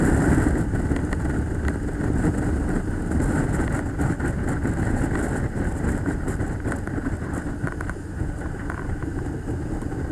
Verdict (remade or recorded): recorded